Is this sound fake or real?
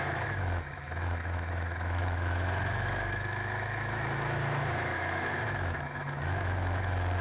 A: fake